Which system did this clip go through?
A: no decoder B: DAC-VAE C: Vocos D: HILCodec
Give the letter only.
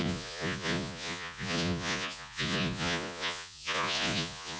C